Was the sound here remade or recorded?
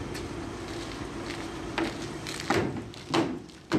recorded